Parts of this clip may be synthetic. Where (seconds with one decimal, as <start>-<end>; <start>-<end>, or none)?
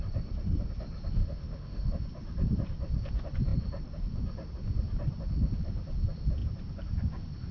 1.2-1.9